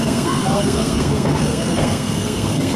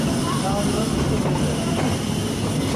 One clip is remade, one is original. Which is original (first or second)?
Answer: second